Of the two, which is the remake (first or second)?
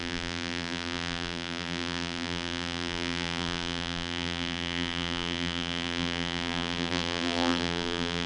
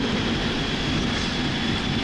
first